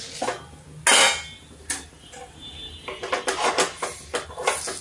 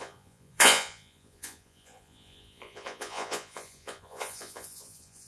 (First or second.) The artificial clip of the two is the second